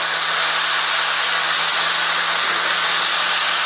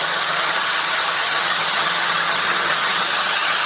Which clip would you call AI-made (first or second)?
second